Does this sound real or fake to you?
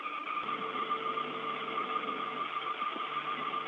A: real